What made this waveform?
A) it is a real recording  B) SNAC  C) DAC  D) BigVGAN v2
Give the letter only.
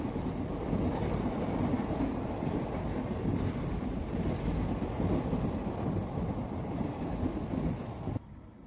A